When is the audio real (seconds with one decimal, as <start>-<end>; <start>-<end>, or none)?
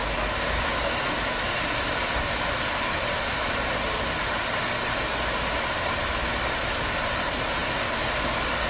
0.0-8.7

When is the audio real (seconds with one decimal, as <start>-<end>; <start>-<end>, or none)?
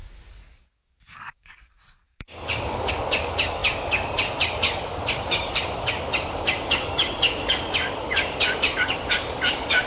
none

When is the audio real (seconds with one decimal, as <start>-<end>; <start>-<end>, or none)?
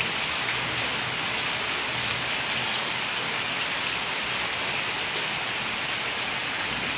0.0-2.6; 3.4-7.0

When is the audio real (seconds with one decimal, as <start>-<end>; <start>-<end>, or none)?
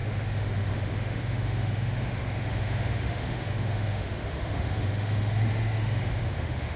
none